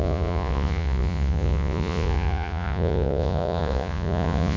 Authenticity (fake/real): fake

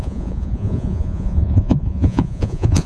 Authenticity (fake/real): fake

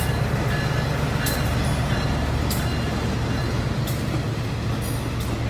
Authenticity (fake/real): real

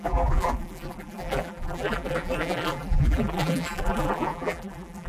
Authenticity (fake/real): fake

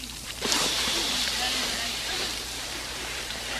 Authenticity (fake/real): fake